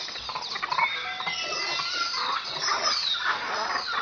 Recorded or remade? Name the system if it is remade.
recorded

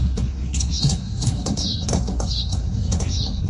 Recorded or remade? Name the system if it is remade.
remade, codec, SNAC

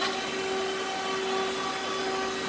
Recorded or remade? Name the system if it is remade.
recorded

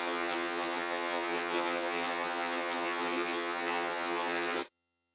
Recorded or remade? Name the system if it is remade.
remade, vocoder, HiFi-GAN